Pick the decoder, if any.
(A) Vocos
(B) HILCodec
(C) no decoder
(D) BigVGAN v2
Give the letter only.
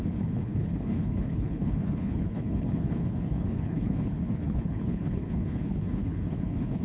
B